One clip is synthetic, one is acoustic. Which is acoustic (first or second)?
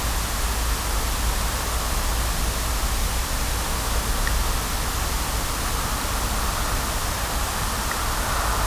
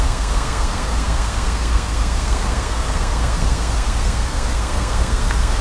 first